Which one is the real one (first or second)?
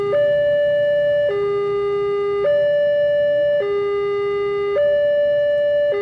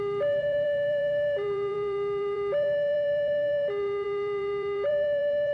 first